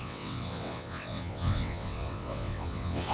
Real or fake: fake